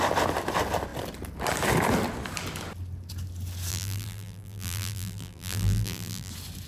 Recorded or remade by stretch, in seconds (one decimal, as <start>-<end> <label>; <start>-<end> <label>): 0.0-3.7 recorded; 3.7-6.3 remade; 6.3-6.7 recorded